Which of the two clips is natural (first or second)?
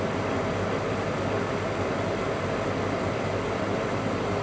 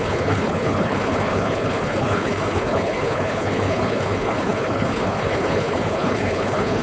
first